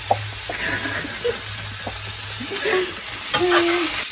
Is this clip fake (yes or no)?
no